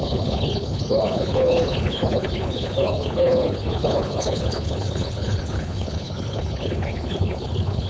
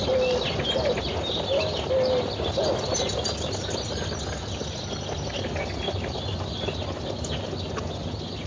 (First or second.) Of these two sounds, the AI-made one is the first